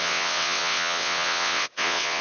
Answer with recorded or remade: remade